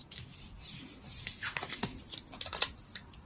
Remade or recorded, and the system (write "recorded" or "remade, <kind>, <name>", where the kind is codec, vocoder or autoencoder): recorded